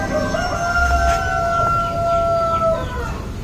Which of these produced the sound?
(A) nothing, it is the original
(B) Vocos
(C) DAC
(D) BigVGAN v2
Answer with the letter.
A